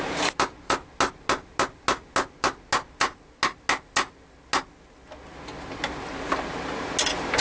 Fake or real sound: real